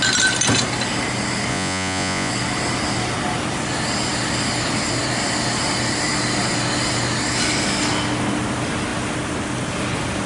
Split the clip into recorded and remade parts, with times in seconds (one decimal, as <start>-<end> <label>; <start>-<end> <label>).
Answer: 0.0-1.5 recorded; 1.5-2.3 remade; 2.3-10.3 recorded